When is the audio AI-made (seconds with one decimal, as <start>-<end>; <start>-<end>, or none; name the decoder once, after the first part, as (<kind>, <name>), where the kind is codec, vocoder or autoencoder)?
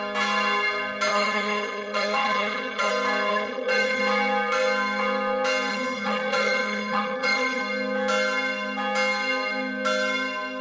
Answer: 1.1-2.9 (vocoder, HiFi-GAN); 3.3-4.0; 5.7-7.6